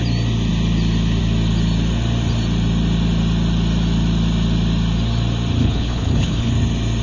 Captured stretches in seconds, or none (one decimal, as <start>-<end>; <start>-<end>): 0.0-5.6; 6.5-7.0